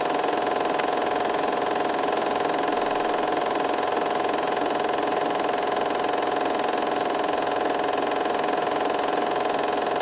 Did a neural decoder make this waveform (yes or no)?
no